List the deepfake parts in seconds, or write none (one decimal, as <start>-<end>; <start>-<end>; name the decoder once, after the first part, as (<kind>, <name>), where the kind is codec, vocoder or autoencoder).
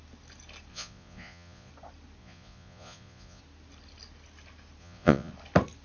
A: 0.7-1.7 (vocoder, Vocos); 2.2-3.4; 4.8-5.3